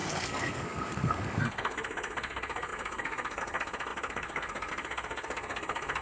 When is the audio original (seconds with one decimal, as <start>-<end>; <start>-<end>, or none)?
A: none